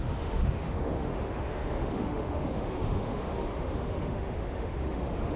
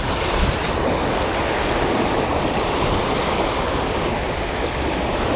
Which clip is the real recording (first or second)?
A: second